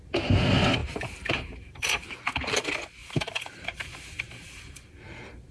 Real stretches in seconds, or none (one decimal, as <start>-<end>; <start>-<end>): 0.0-0.8; 2.6-3.0